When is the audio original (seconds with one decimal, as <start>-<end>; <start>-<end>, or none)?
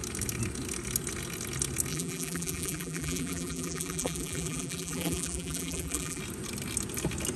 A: 0.0-1.9; 6.2-7.4